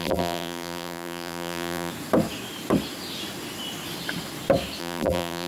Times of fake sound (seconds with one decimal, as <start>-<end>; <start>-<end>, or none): 0.0-1.9; 4.8-5.5